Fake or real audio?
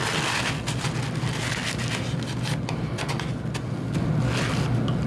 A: real